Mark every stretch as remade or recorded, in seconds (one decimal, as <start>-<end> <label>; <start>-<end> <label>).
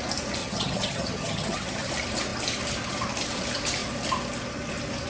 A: 0.0-0.4 recorded; 0.4-1.9 remade; 1.9-5.1 recorded